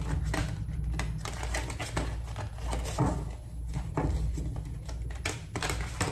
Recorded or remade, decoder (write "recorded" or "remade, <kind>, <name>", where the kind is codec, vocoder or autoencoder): recorded